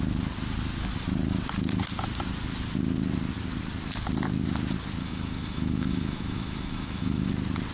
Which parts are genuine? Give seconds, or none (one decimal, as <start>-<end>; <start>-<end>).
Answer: 0.0-5.0; 7.3-7.7

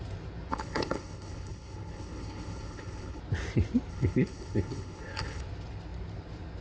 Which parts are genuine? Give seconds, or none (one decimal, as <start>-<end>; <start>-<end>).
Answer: 0.0-0.5; 3.2-3.9; 5.4-6.6

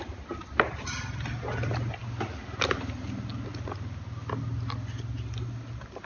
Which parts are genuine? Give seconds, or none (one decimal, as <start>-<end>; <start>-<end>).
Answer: 0.0-6.1

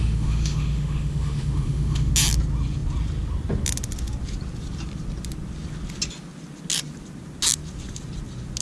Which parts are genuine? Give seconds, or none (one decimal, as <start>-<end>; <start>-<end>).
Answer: 2.1-8.6